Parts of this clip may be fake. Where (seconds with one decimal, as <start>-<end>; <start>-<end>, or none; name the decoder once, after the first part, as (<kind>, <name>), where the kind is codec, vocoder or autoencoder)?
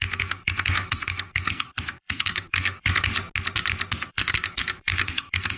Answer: 0.0-3.1 (codec, SNAC); 4.1-5.6